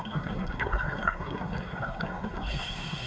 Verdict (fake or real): fake